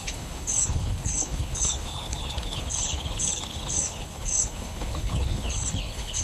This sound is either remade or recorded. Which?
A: remade